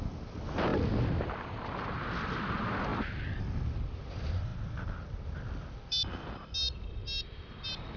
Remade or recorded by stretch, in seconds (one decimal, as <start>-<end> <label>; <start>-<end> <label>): 0.0-8.0 recorded